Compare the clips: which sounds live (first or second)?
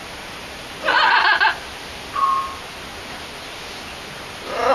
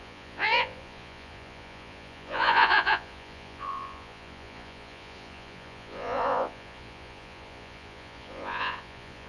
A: first